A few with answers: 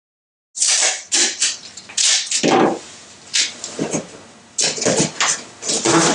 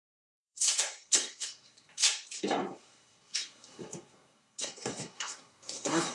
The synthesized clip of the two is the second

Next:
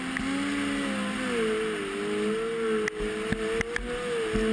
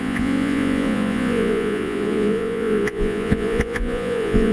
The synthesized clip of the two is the second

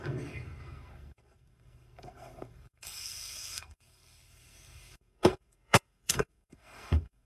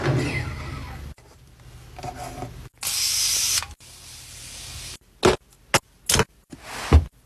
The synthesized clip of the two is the first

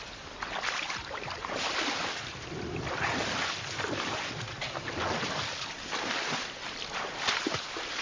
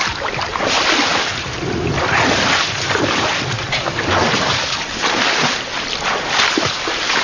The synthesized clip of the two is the first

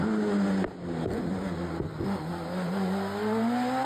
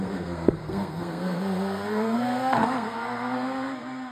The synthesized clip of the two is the second